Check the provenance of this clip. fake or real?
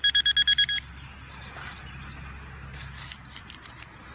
real